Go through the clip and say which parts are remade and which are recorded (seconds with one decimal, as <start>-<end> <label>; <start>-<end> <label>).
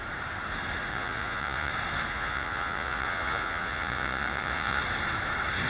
0.0-0.9 recorded; 0.9-1.7 remade; 1.7-2.1 recorded; 2.1-4.8 remade; 4.8-5.7 recorded